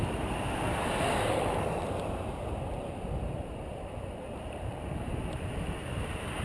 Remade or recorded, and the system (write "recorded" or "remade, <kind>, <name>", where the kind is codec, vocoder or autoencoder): remade, vocoder, BigVGAN v2